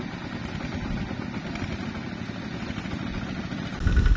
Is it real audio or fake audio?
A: real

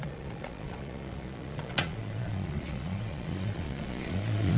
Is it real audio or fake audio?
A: fake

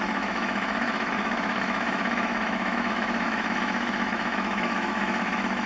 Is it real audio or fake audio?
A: fake